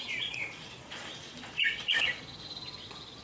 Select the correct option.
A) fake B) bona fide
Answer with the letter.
A